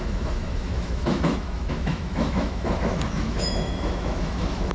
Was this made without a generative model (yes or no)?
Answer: no